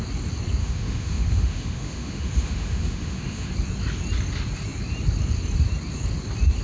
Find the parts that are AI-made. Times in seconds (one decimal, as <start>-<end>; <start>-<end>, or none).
0.6-3.5